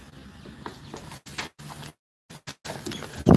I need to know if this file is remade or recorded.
recorded